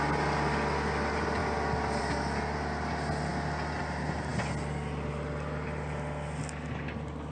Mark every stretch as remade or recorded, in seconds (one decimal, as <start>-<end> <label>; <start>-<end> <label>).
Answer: 0.0-7.3 recorded